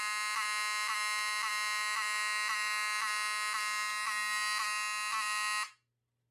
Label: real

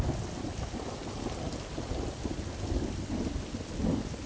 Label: real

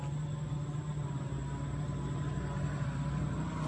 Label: real